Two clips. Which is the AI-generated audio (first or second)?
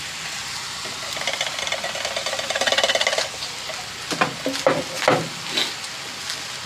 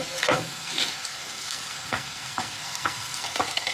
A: second